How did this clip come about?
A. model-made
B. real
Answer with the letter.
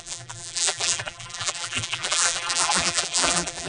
A